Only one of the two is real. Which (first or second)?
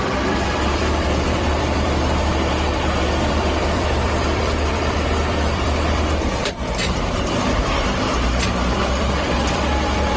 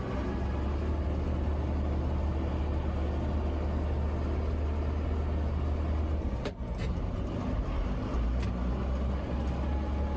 second